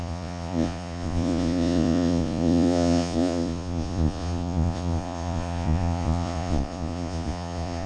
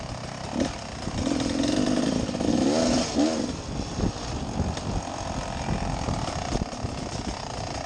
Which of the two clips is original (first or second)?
second